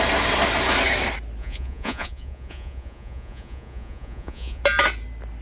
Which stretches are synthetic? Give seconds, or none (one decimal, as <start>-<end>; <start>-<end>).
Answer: 1.4-4.6

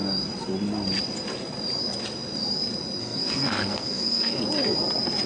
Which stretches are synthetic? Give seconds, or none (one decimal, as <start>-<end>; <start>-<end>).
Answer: 3.0-4.4

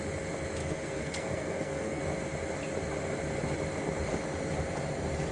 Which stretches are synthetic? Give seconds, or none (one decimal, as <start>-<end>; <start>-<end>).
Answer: 0.6-2.0

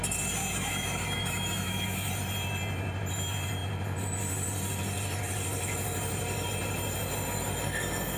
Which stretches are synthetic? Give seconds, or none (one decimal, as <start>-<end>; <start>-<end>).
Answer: 0.4-2.1

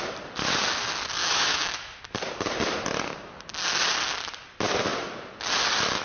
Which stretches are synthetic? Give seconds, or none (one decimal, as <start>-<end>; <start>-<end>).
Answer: 1.2-2.0